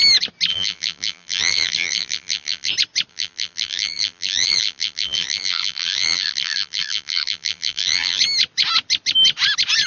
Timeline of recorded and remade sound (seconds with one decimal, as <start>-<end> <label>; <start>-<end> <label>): 0.0-0.5 recorded; 0.5-2.7 remade; 2.7-3.1 recorded; 3.1-8.2 remade; 8.2-9.9 recorded